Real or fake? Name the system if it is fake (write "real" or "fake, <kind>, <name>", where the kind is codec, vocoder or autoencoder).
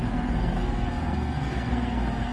fake, codec, SNAC